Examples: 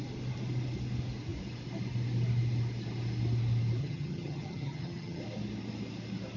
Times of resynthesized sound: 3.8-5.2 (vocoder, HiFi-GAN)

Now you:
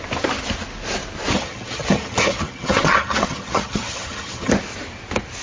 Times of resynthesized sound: 1.3-4.5 (vocoder, HiFi-GAN)

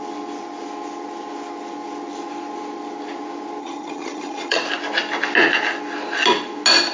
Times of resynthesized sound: 3.6-4.6 (vocoder, HiFi-GAN)

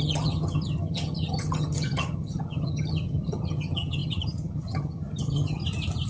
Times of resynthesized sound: 0.0-5.6 (vocoder, HiFi-GAN)